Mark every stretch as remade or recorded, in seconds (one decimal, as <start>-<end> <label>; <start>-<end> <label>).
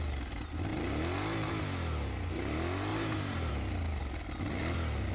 0.0-2.9 recorded; 2.9-3.5 remade; 3.5-5.1 recorded